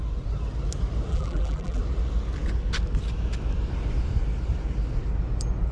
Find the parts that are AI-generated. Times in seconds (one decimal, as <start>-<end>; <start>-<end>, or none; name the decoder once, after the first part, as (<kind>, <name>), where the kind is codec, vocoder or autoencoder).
1.1-1.8 (vocoder, BigVGAN v2)